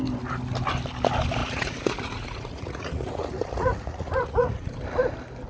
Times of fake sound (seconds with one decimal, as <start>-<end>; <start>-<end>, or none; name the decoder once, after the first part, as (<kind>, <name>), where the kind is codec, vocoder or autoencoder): 1.4-4.7 (vocoder, Vocos)